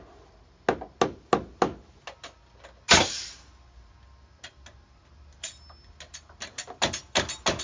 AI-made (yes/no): no